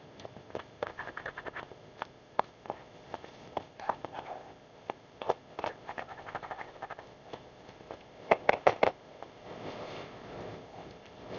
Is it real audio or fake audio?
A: fake